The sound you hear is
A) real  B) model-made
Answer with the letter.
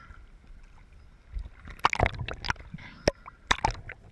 A